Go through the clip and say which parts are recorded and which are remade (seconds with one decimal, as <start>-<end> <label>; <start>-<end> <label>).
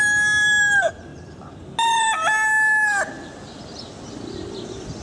0.0-5.0 recorded